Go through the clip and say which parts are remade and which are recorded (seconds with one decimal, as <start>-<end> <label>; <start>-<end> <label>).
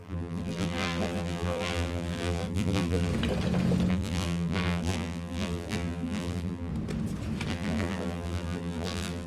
0.0-3.1 remade; 3.1-3.9 recorded; 3.9-6.7 remade; 6.7-7.5 recorded; 7.5-9.3 remade